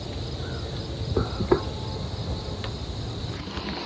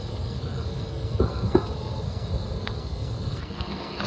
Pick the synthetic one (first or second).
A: second